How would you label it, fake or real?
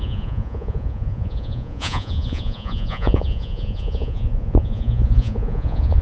fake